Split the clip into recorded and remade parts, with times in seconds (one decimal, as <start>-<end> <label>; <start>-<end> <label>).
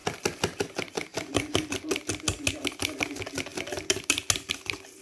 0.0-5.0 recorded